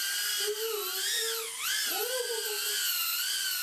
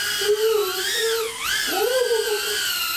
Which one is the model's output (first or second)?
second